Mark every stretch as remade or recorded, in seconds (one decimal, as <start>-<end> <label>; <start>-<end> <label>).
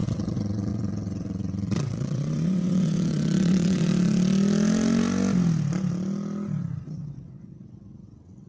0.0-3.9 remade; 3.9-6.8 recorded; 6.8-8.5 remade